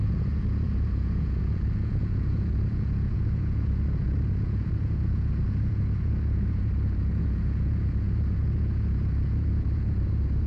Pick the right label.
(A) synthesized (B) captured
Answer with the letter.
A